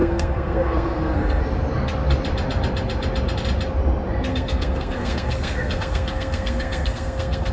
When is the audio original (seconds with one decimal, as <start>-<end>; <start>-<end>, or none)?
1.4-4.3